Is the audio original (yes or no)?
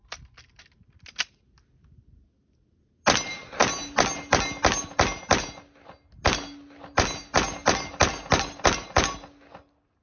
yes